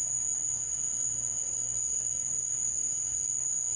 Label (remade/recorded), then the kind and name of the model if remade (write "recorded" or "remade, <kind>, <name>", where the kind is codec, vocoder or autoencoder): remade, codec, SNAC